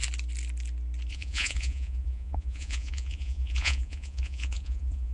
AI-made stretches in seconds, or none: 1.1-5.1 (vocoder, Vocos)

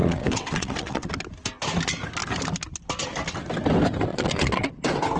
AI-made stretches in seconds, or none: 0.0-1.1 (vocoder, WaveNeXt); 4.1-4.7

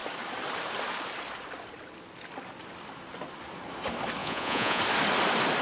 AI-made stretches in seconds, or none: 4.2-4.8 (vocoder, Vocos)